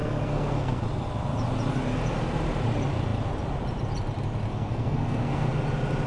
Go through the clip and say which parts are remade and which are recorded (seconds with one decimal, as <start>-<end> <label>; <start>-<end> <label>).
0.0-0.8 remade; 0.8-4.5 recorded; 4.5-5.5 remade; 5.5-6.1 recorded